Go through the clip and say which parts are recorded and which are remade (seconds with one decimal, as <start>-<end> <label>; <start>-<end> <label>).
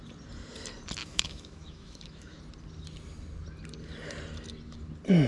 0.0-1.0 recorded; 1.0-2.4 remade; 2.4-5.3 recorded